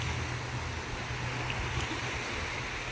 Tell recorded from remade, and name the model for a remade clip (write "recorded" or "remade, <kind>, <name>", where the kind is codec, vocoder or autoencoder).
recorded